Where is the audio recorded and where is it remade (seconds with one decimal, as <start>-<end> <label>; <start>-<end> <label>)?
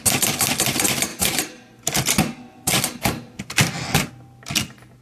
0.0-1.1 recorded; 1.1-4.1 remade; 4.1-5.0 recorded